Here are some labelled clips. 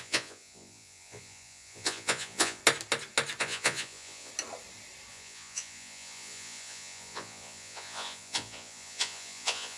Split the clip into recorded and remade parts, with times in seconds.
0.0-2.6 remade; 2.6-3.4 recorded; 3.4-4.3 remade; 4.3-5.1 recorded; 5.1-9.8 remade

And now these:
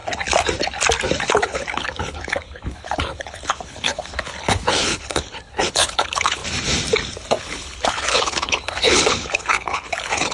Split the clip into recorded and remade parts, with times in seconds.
0.0-1.2 recorded; 1.2-6.4 remade; 6.4-7.4 recorded; 7.4-10.3 remade

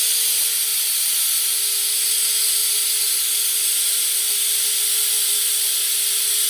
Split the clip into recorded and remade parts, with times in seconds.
0.0-0.7 recorded; 0.7-2.1 remade; 2.1-2.6 recorded; 2.6-5.7 remade; 5.7-6.5 recorded

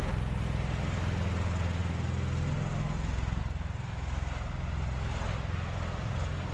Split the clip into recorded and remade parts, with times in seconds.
0.0-6.5 recorded